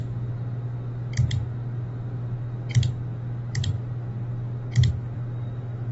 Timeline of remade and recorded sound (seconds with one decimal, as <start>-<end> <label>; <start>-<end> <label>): 0.0-5.9 recorded